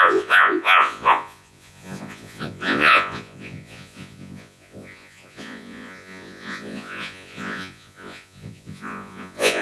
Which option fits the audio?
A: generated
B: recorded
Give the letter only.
A